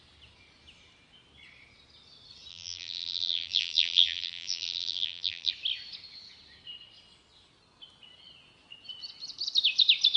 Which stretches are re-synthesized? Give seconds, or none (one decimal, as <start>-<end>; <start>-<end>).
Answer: 2.5-5.5